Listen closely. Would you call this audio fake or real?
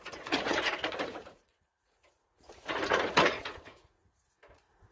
fake